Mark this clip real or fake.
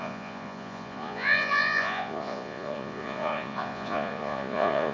fake